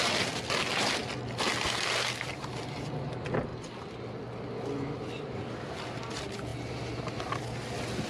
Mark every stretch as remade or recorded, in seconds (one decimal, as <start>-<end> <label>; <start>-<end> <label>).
0.0-8.1 recorded